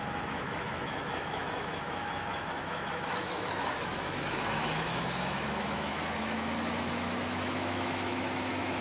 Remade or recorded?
remade